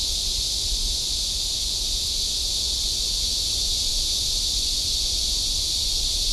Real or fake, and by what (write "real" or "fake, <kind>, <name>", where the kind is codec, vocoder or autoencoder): fake, vocoder, Vocos